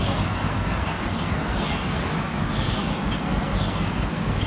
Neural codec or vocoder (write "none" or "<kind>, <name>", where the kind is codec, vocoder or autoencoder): codec, SNAC